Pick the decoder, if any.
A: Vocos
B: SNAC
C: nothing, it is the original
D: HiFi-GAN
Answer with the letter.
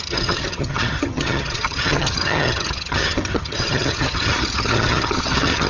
D